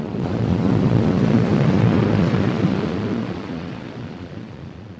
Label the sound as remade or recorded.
remade